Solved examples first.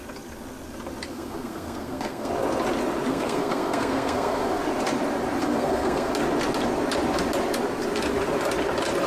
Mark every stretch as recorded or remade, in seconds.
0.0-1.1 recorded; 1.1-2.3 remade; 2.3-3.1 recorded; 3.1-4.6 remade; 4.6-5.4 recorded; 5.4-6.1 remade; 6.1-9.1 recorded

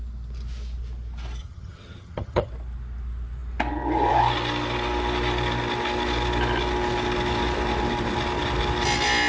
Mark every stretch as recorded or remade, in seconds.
0.0-1.4 recorded; 1.4-2.5 remade; 2.5-9.3 recorded

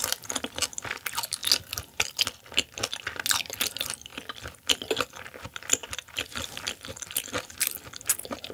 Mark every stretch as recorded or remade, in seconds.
0.0-1.4 remade; 1.4-3.4 recorded; 3.4-8.5 remade

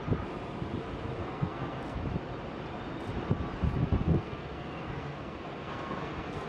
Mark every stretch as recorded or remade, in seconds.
0.0-1.2 recorded; 1.2-2.0 remade; 2.0-3.8 recorded; 3.8-6.5 remade

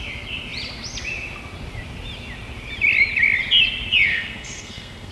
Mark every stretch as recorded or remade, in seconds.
0.0-4.1 recorded; 4.1-5.1 remade

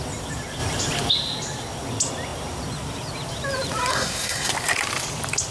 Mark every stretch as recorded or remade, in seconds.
0.0-3.9 recorded; 3.9-4.5 remade; 4.5-5.5 recorded